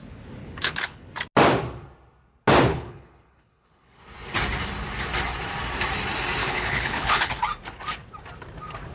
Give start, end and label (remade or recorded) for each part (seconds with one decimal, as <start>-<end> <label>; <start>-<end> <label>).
0.0-0.4 recorded; 0.4-1.1 remade; 1.1-2.7 recorded; 2.7-4.0 remade; 4.0-6.4 recorded; 6.4-7.4 remade; 7.4-8.9 recorded